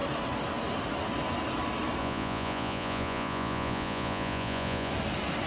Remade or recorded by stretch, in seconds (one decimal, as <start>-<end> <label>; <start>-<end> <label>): 0.0-2.0 recorded; 2.0-4.9 remade; 4.9-5.5 recorded